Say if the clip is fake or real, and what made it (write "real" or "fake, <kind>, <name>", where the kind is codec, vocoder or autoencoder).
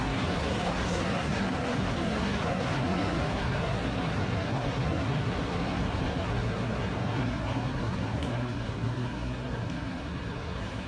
fake, codec, SNAC